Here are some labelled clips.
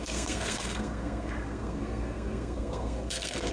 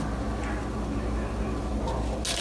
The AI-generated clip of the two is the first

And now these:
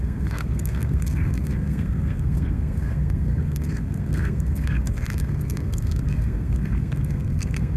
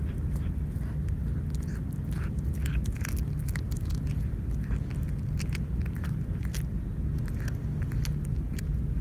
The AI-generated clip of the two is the first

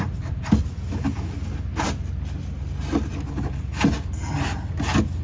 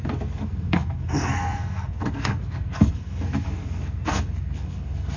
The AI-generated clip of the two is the second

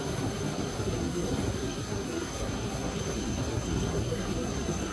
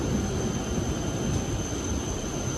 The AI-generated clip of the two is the first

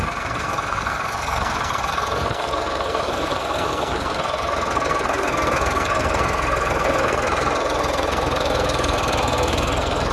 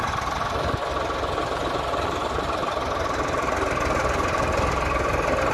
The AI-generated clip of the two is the first